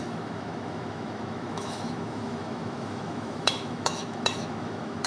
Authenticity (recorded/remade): remade